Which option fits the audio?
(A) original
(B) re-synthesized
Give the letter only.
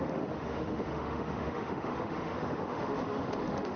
B